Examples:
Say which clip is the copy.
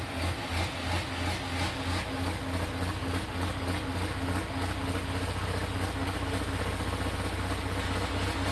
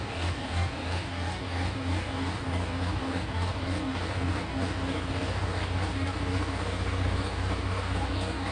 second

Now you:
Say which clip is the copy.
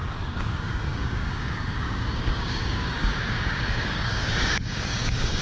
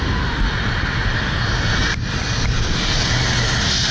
first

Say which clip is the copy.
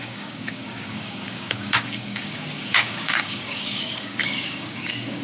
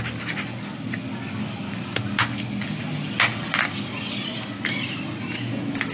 first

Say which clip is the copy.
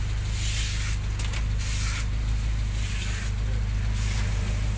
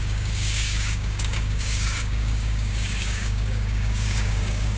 second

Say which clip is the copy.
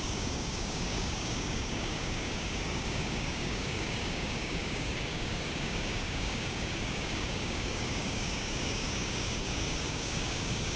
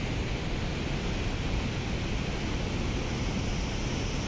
first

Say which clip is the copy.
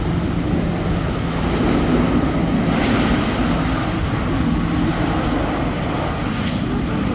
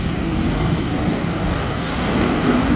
second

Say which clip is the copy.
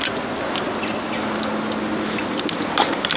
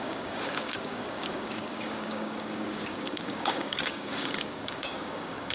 second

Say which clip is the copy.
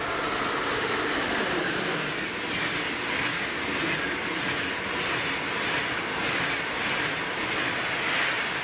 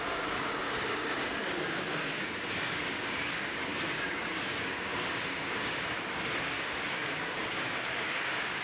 second